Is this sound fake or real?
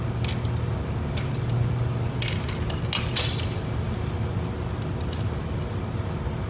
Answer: real